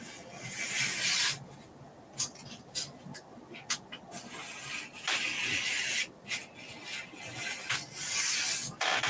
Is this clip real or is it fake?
real